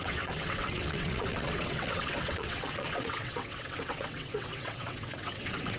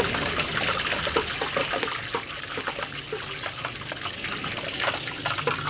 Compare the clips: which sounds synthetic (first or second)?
first